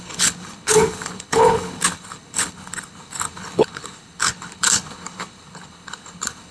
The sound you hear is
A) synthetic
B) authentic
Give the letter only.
A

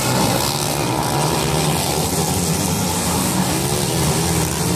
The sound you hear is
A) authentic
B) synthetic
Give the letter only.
A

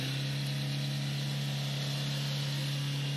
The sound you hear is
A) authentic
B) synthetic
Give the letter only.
A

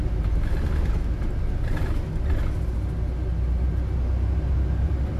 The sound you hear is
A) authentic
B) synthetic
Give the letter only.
A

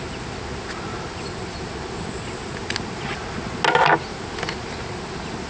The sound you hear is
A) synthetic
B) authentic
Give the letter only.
B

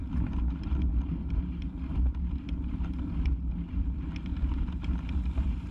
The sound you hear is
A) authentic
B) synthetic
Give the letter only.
A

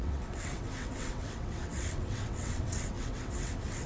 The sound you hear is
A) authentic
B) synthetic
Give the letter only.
B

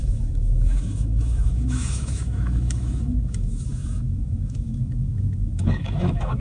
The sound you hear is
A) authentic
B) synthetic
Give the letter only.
B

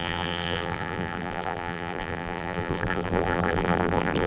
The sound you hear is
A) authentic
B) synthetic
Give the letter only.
B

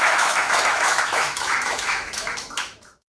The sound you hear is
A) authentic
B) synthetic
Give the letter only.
B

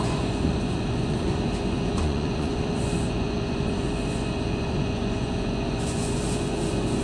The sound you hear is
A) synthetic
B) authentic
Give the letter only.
A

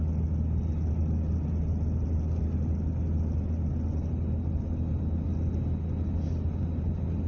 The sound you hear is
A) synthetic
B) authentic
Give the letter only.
B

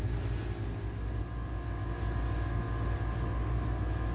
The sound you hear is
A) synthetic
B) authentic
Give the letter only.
B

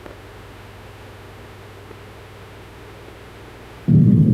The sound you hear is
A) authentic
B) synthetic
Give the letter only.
B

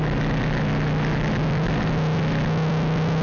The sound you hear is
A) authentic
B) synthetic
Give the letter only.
A